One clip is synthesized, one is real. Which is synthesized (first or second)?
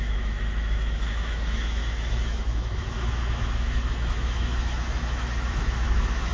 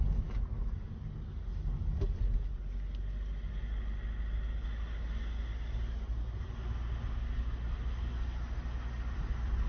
first